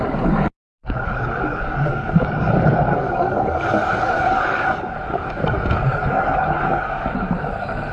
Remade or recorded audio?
remade